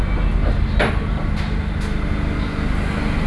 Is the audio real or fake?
real